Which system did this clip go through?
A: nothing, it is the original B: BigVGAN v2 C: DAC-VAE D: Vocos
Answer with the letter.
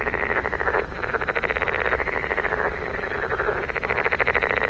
A